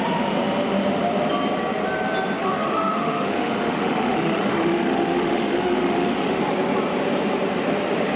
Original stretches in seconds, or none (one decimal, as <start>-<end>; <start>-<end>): 0.0-2.4; 6.4-8.2